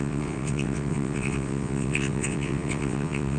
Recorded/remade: remade